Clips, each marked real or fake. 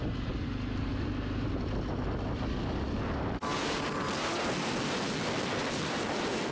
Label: real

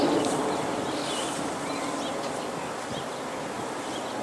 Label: real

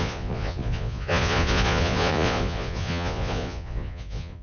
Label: fake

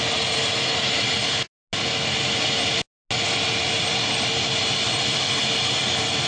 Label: real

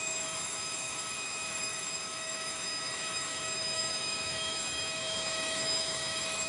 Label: fake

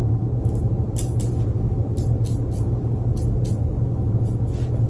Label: real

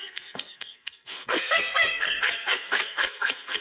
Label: fake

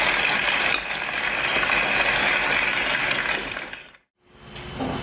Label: real